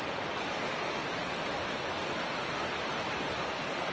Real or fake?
real